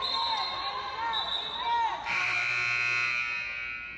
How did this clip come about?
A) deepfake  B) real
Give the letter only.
B